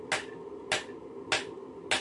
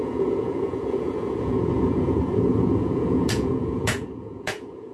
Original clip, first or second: first